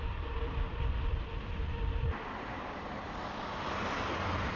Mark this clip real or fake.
fake